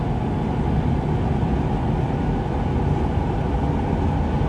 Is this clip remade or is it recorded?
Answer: recorded